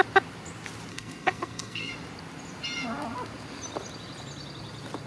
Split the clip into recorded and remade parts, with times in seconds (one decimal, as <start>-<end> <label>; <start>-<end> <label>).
0.0-0.9 recorded; 0.9-1.9 remade; 1.9-5.1 recorded